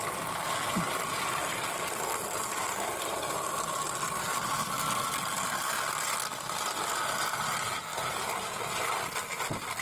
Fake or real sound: real